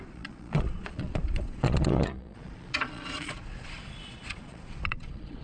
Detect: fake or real fake